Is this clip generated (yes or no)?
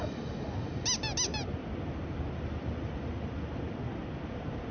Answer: no